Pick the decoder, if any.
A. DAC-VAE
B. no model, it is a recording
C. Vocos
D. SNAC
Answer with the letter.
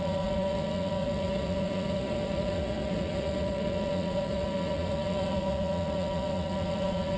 C